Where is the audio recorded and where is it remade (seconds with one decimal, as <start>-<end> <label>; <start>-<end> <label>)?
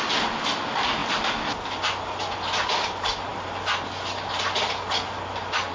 0.0-5.7 recorded